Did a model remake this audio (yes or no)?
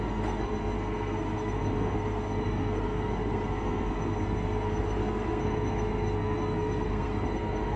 yes